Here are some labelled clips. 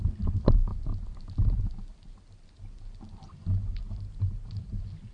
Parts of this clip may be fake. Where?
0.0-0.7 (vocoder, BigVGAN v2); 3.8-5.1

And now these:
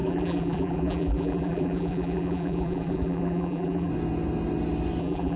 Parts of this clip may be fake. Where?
0.0-3.9 (vocoder, BigVGAN v2); 5.0-5.4

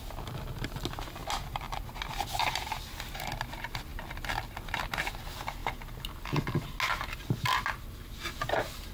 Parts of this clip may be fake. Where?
none